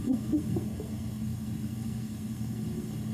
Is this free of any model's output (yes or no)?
no